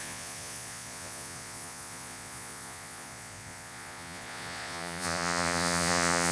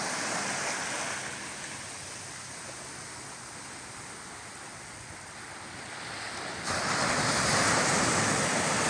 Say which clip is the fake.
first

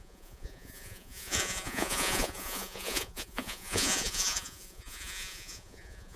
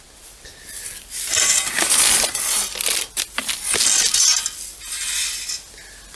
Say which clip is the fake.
first